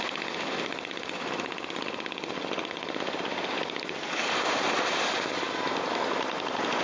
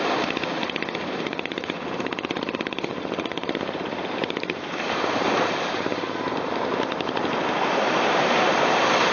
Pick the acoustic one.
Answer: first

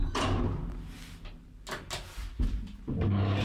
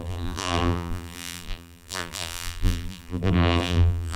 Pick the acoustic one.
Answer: first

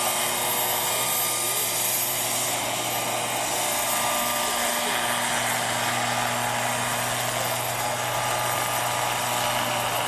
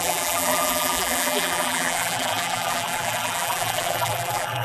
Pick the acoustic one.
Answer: first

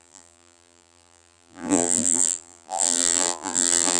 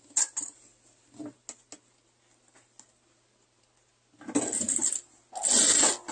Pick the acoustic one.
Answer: second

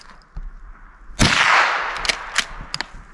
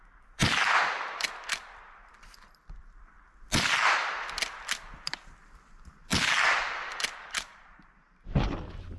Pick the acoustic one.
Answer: first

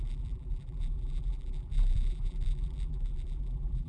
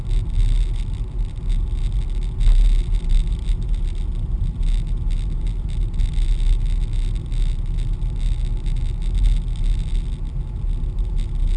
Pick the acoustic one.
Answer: second